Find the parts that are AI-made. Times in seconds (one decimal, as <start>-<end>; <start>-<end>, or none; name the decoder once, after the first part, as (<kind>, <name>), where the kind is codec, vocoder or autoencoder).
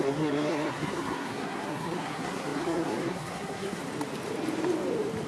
0.0-3.8 (codec, SNAC)